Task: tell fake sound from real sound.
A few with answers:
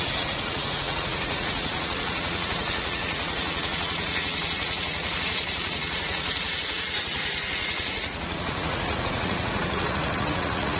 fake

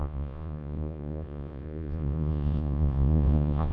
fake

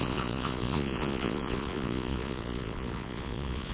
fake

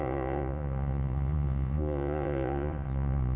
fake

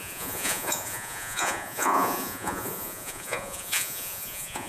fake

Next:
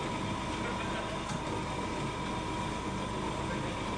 real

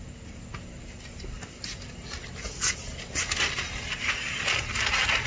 real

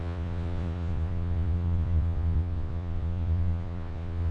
fake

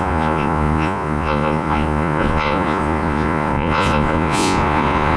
fake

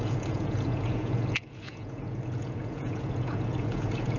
fake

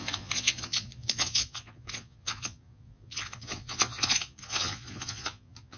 fake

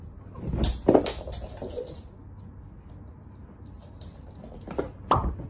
real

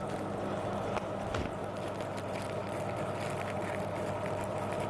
real